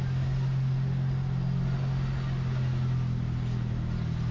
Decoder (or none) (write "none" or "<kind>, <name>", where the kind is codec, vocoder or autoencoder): none